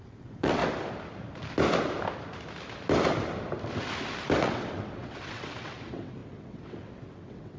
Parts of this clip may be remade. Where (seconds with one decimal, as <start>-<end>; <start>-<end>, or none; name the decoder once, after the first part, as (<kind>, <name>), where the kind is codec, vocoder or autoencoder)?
0.0-0.6 (vocoder, WaveNeXt); 4.4-7.6